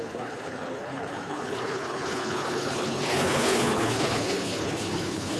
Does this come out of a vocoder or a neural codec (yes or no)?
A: yes